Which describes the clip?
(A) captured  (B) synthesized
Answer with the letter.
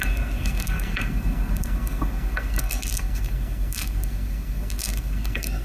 B